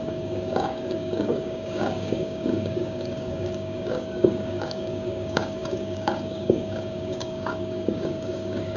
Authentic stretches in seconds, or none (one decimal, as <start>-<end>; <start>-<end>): none